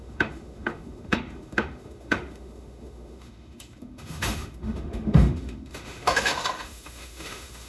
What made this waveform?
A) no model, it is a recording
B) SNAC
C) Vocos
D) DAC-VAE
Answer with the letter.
D